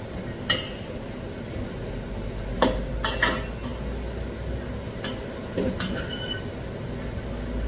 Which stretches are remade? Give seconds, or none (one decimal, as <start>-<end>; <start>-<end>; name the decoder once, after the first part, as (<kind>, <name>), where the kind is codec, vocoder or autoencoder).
none

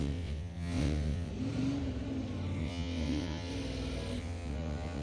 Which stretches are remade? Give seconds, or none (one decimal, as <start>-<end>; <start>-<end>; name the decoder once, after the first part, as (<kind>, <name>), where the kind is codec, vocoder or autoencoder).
0.0-1.3 (vocoder, WaveNeXt); 2.6-3.5; 4.2-5.0

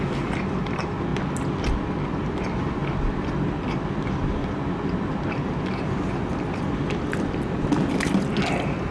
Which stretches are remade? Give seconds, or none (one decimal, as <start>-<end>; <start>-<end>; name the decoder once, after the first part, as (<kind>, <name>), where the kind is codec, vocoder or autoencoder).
none

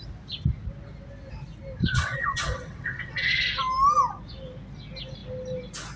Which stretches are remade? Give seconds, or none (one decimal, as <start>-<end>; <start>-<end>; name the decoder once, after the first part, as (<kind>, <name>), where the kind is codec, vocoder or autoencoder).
1.8-3.3 (vocoder, WaveNeXt)

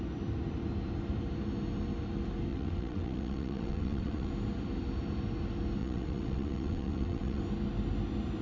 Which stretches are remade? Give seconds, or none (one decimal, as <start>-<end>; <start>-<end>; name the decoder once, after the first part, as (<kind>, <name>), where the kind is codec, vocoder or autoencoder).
2.5-4.3 (vocoder, WaveNeXt); 5.8-7.4

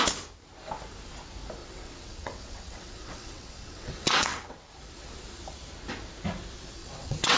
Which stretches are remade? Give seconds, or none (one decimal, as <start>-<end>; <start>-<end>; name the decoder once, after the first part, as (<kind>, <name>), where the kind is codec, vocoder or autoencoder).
1.6-4.7 (vocoder, WaveNeXt); 6.8-7.4

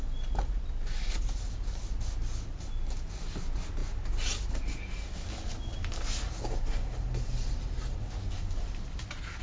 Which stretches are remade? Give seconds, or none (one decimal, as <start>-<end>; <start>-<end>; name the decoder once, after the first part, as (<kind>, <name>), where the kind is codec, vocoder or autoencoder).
none